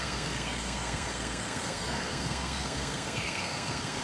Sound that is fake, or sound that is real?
fake